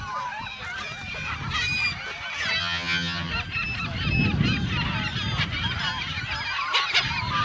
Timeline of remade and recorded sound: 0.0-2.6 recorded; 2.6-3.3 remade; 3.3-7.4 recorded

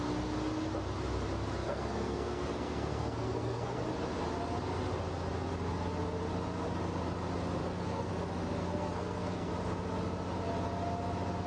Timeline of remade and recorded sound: 0.0-1.6 recorded; 1.6-3.8 remade; 3.8-7.6 recorded; 7.6-8.1 remade; 8.1-8.6 recorded; 8.6-9.5 remade; 9.5-11.5 recorded

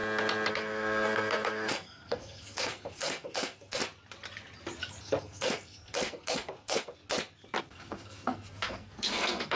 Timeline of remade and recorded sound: 0.0-0.5 recorded; 0.5-3.8 remade; 3.8-5.0 recorded; 5.0-7.0 remade; 7.0-7.6 recorded; 7.6-9.6 remade

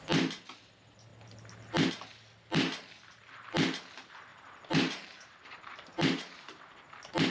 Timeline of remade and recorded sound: 0.0-4.3 recorded; 4.3-6.6 remade; 6.6-7.3 recorded

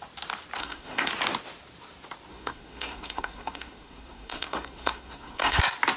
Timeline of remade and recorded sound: 0.0-0.6 recorded; 0.6-1.1 remade; 1.1-2.3 recorded; 2.3-5.6 remade; 5.6-6.0 recorded